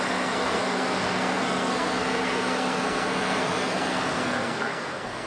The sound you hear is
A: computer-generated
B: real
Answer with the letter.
A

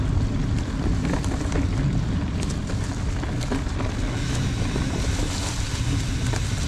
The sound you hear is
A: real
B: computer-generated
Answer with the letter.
A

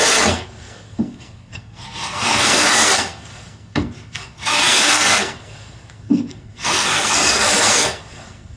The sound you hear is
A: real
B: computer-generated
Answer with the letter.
B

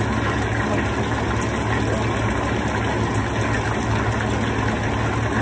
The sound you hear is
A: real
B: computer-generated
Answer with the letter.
A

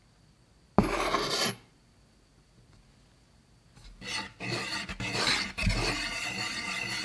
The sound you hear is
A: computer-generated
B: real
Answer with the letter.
B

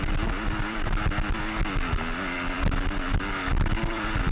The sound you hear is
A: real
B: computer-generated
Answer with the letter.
A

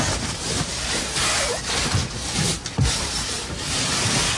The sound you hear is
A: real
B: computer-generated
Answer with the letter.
A